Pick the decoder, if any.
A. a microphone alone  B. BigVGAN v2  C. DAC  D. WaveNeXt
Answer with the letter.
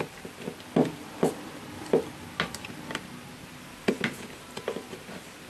A